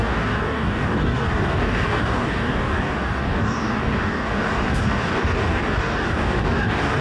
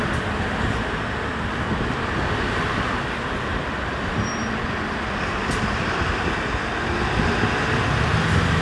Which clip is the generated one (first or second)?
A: first